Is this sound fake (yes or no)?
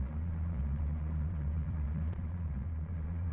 yes